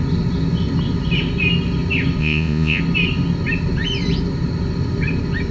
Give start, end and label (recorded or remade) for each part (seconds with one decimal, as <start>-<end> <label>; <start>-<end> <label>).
0.0-2.2 recorded; 2.2-2.8 remade; 2.8-5.5 recorded